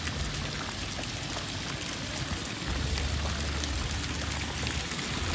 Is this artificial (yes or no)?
no